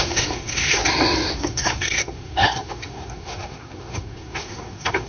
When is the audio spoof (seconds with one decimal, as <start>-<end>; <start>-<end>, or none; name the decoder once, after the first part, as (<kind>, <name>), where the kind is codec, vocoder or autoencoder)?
0.0-0.8 (codec, SNAC); 1.3-5.1